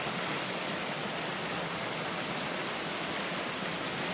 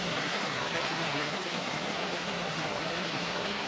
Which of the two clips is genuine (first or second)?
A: first